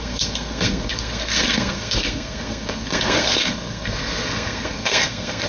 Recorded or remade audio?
remade